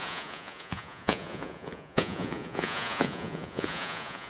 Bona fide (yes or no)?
no